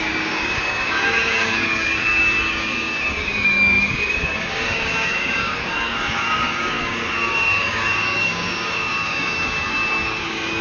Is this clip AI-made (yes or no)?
yes